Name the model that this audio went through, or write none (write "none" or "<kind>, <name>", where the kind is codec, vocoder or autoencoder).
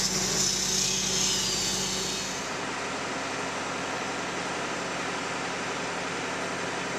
none